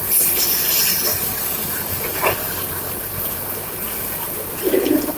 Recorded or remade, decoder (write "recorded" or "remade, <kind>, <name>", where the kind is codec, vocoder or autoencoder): remade, vocoder, BigVGAN v2